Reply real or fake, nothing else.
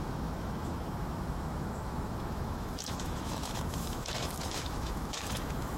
fake